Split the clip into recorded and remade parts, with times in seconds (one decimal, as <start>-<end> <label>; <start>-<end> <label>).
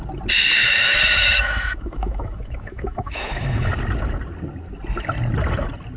0.0-0.6 recorded; 0.6-3.7 remade; 3.7-6.0 recorded